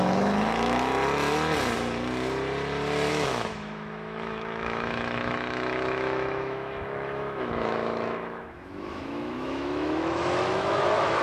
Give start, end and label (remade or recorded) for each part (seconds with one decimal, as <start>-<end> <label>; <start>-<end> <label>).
0.0-0.9 remade; 0.9-3.1 recorded; 3.1-11.2 remade